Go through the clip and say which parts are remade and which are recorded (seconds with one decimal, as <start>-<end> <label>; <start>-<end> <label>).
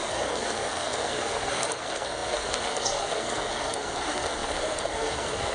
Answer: 0.0-5.5 remade